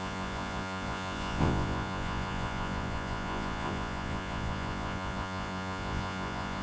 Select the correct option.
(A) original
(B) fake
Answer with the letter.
B